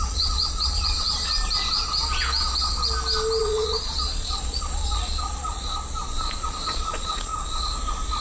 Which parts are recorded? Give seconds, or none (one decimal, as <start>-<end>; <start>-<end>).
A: 1.3-3.4; 5.7-6.4; 7.3-8.2